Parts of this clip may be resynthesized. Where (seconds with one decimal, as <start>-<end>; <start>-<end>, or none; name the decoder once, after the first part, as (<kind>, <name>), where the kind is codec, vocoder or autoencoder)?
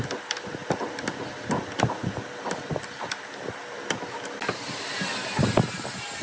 none